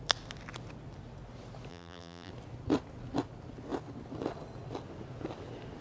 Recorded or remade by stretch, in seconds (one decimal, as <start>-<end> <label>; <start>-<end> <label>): 0.0-1.7 recorded; 1.7-2.3 remade; 2.3-5.8 recorded